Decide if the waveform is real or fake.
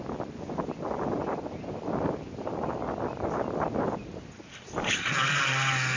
real